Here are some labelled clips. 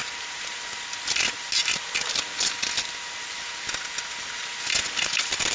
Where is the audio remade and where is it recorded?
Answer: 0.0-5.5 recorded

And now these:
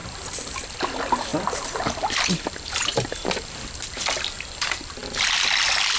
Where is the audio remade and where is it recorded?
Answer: 0.0-6.0 recorded

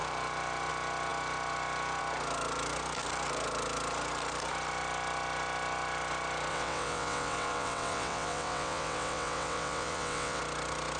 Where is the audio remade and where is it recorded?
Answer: 0.0-6.5 recorded; 6.5-10.4 remade; 10.4-11.0 recorded

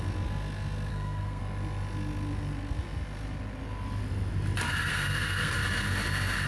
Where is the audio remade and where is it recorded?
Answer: 0.0-0.9 recorded; 0.9-1.4 remade; 1.4-4.9 recorded; 4.9-5.5 remade; 5.5-6.5 recorded

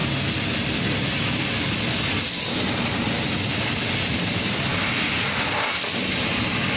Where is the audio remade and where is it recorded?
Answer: 0.0-6.8 recorded

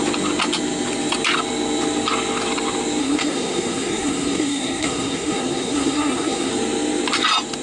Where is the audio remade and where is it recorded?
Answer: 0.0-3.0 recorded; 3.0-6.5 remade; 6.5-7.6 recorded

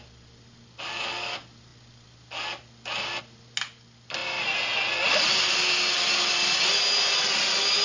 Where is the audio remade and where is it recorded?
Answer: 0.0-7.8 recorded

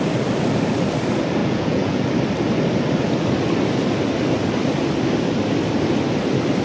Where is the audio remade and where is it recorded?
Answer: 0.0-1.4 recorded; 1.4-2.0 remade; 2.0-6.6 recorded